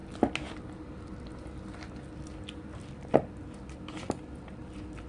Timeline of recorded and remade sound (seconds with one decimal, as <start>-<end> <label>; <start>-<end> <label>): 0.0-5.1 recorded